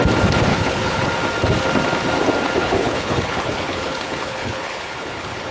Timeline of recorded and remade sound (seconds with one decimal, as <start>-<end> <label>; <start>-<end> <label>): 0.0-0.5 recorded; 0.5-1.1 remade; 1.1-2.6 recorded; 2.6-5.5 remade